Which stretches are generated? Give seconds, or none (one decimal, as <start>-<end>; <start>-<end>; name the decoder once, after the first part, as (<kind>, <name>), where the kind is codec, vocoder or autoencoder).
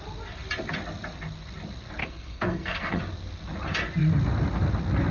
2.0-3.0 (codec, SNAC)